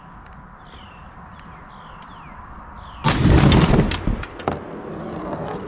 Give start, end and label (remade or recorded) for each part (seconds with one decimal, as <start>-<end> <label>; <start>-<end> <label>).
0.0-5.7 recorded